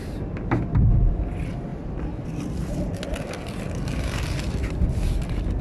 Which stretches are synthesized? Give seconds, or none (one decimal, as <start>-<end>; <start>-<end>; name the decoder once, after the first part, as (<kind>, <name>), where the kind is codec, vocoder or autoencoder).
none